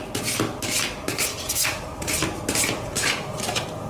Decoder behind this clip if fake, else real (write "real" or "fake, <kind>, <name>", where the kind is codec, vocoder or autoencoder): real